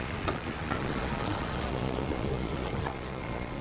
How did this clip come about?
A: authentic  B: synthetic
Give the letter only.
B